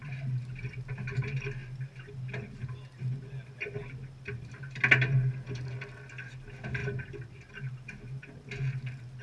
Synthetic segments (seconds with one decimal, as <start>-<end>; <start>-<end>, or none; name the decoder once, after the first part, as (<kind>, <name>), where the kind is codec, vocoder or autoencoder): none